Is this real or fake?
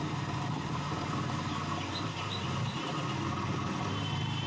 real